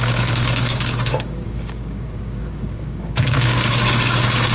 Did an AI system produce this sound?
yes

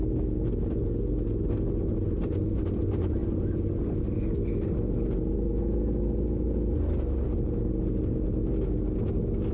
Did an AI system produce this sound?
no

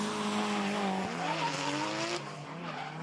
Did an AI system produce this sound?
no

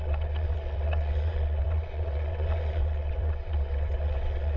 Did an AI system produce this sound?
yes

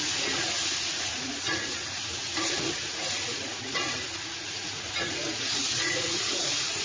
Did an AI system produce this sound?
yes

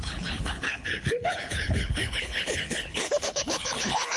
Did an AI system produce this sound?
yes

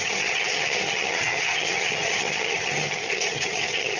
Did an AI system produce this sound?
yes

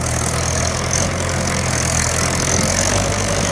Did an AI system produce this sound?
yes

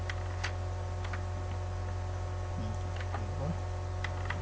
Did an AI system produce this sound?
no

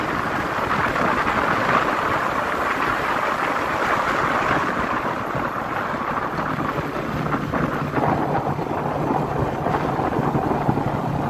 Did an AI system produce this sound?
no